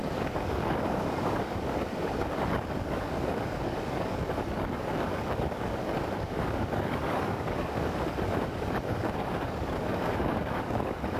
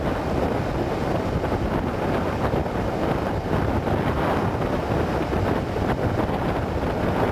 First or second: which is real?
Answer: second